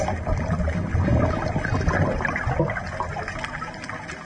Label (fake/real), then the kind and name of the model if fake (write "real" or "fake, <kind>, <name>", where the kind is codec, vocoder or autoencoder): real